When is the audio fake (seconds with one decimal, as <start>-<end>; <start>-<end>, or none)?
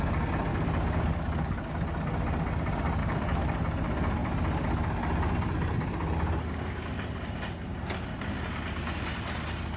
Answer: 0.5-1.7; 3.0-3.6